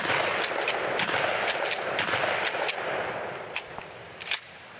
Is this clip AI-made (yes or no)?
no